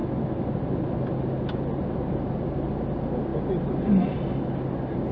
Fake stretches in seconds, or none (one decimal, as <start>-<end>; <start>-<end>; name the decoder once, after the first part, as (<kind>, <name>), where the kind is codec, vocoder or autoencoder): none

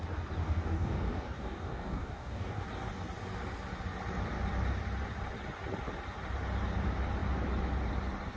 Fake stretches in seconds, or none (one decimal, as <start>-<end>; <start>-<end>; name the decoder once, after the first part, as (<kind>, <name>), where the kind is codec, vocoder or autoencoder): 0.4-2.6 (codec, DAC)

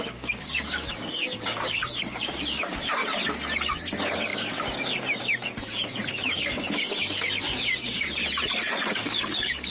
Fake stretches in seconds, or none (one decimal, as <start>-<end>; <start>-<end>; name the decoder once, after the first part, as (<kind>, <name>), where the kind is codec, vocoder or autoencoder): 0.0-3.0 (codec, DAC); 3.7-8.2; 8.9-9.7

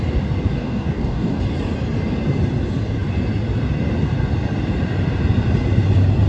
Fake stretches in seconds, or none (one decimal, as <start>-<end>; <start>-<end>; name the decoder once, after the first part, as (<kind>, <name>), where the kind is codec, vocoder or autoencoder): 0.6-1.4 (codec, DAC)

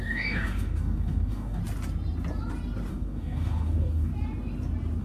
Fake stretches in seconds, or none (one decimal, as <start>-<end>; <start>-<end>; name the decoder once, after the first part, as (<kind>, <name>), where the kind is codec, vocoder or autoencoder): 0.0-1.6 (codec, DAC); 2.9-4.1